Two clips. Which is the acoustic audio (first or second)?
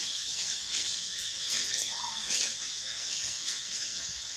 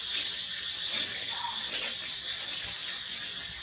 second